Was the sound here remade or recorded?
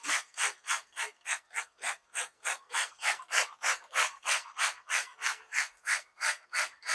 remade